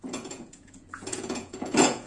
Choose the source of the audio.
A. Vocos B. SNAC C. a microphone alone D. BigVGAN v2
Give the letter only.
A